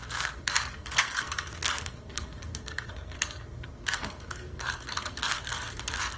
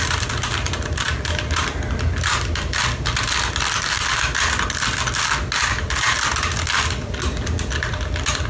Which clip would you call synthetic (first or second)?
first